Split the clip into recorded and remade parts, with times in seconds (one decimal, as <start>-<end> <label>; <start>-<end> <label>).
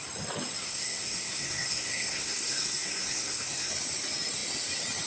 0.0-0.6 recorded; 0.6-3.7 remade; 3.7-5.1 recorded